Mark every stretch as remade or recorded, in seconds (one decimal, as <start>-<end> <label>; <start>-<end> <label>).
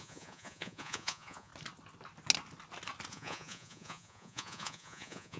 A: 0.0-1.5 remade; 1.5-3.1 recorded; 3.1-5.4 remade